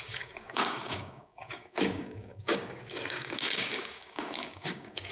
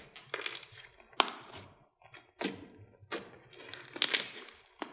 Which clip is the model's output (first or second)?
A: first